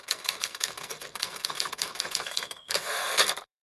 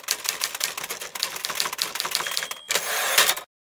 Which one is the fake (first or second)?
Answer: first